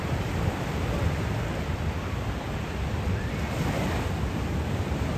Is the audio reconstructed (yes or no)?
yes